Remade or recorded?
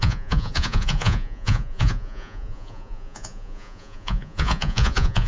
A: remade